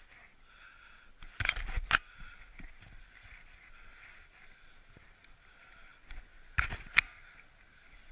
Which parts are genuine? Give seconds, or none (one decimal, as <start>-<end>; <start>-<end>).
0.0-8.1